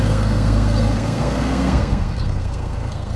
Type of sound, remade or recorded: remade